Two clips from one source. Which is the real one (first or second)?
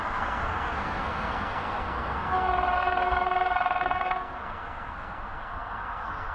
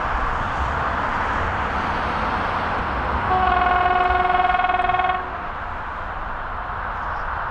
second